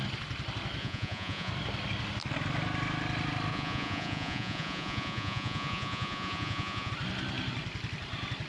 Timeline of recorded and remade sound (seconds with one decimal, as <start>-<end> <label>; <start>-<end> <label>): 0.0-0.8 recorded; 0.8-1.5 remade; 1.5-3.5 recorded; 3.5-6.9 remade; 6.9-8.5 recorded